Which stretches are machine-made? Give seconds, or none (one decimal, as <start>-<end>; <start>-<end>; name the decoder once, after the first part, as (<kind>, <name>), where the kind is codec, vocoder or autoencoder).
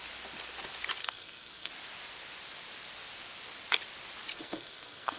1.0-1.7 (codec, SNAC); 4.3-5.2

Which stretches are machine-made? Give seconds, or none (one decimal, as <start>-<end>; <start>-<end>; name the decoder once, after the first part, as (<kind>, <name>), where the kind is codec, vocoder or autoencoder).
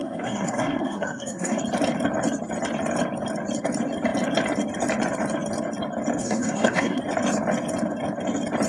0.0-1.6 (codec, SNAC); 6.2-7.0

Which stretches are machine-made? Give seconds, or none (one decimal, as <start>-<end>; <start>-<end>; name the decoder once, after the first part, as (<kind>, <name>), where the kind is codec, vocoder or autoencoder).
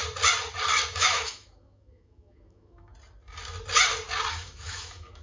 0.9-2.9 (autoencoder, DAC-VAE); 4.3-5.2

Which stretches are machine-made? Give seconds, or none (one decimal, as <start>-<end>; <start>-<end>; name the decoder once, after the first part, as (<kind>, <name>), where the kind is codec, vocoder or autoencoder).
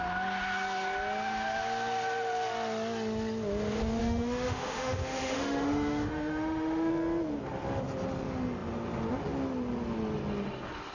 4.0-6.9 (autoencoder, DAC-VAE)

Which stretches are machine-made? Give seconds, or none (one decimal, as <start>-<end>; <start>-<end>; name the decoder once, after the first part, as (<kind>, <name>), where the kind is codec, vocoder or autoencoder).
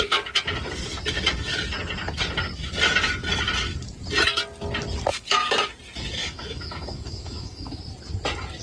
5.1-5.6 (autoencoder, DAC-VAE); 6.2-7.8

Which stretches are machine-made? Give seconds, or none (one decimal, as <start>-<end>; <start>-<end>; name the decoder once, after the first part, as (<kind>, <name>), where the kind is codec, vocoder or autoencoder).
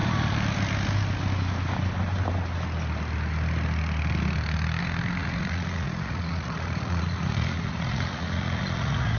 5.2-9.2 (vocoder, Vocos)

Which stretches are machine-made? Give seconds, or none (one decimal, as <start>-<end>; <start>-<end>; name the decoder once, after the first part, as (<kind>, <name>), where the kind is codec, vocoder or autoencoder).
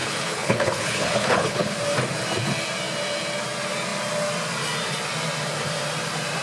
0.0-1.7 (codec, HILCodec)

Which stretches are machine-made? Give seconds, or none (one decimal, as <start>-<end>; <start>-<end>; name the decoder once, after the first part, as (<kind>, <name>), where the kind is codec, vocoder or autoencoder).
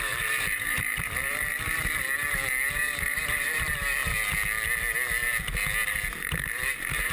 0.0-4.0 (vocoder, BigVGAN v2); 6.1-7.1